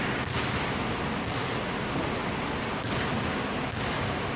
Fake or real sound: real